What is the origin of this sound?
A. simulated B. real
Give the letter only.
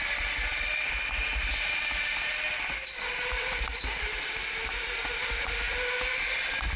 B